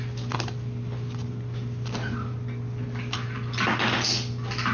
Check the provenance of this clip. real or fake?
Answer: real